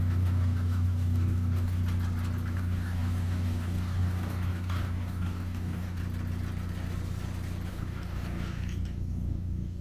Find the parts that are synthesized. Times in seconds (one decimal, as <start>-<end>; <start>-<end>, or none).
0.0-1.8; 2.5-6.0; 7.7-9.8